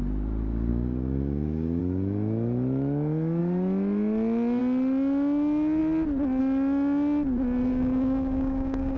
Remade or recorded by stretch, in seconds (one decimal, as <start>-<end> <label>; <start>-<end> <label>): 0.0-0.7 recorded; 0.7-1.8 remade; 1.8-7.7 recorded; 7.7-9.0 remade